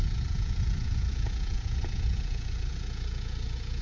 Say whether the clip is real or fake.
fake